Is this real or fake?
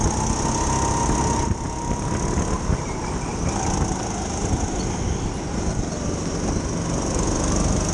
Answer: real